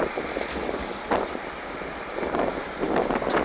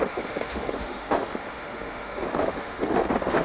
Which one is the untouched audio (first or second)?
first